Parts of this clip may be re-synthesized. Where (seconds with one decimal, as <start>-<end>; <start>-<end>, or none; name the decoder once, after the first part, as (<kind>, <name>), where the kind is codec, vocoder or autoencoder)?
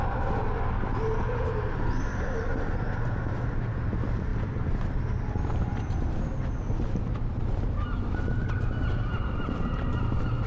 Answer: 4.3-6.1 (vocoder, BigVGAN v2); 9.1-9.7